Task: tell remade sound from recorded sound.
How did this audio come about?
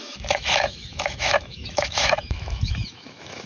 remade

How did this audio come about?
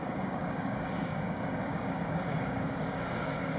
remade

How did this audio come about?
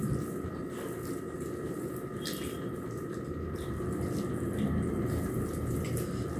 recorded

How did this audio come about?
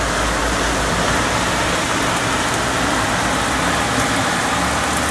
recorded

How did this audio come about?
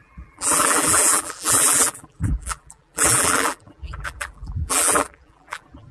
remade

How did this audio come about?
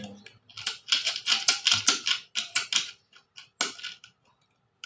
recorded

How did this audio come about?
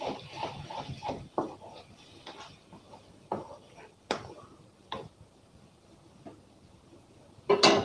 recorded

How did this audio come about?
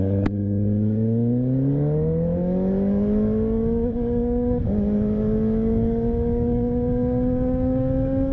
remade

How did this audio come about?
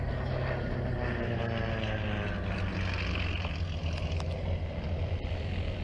recorded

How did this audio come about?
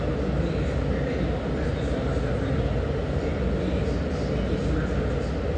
recorded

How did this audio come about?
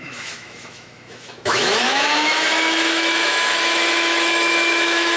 remade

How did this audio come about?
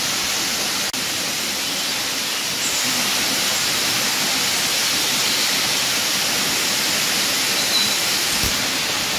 recorded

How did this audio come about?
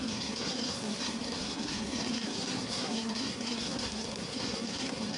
remade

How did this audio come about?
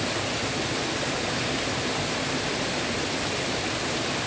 recorded